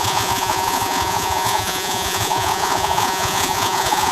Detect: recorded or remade remade